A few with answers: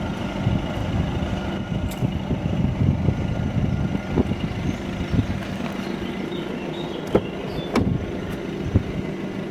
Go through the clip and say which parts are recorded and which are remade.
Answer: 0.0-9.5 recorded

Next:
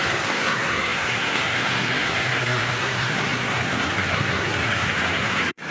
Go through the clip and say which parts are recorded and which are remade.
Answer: 0.0-5.7 remade